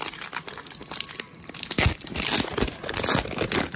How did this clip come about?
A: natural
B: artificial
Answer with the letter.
A